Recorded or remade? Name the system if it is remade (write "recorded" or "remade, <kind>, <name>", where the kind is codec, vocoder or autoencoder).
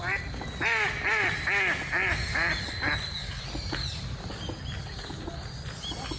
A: recorded